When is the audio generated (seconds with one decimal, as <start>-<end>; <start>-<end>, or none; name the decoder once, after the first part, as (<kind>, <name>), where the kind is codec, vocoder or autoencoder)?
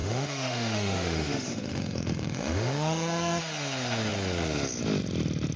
0.0-3.4 (autoencoder, DAC-VAE)